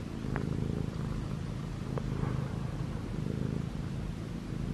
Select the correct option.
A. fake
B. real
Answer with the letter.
B